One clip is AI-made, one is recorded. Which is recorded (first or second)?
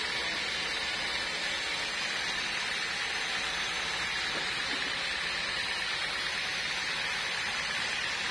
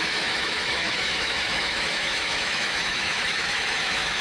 first